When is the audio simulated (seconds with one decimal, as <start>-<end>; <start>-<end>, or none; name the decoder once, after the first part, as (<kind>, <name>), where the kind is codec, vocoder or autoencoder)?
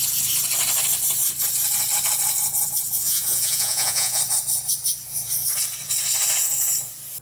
3.0-4.2 (vocoder, Vocos)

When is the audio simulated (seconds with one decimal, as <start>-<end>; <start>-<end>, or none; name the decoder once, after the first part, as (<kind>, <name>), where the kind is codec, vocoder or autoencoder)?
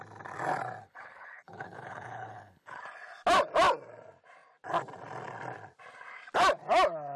0.8-2.8 (codec, HILCodec)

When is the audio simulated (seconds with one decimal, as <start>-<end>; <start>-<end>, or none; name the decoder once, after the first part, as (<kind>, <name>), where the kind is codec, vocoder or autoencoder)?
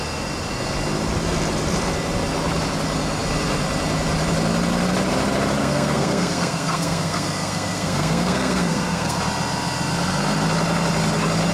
5.6-9.2 (codec, SNAC)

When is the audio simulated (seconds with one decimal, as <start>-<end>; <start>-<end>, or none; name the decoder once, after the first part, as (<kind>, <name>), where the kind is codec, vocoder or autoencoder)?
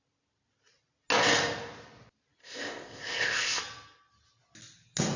2.4-3.6 (codec, ZipCodec)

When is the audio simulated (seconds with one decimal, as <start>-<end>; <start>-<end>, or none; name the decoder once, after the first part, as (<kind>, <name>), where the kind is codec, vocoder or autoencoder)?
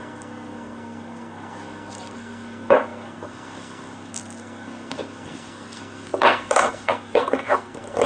0.0-8.1 (codec, SNAC)